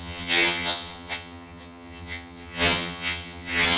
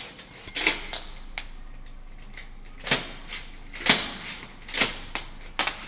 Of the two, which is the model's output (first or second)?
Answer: first